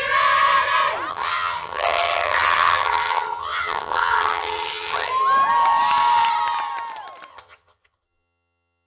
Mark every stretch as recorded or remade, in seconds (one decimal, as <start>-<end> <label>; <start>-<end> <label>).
0.0-1.1 recorded; 1.1-5.1 remade; 5.1-7.3 recorded; 7.3-8.9 remade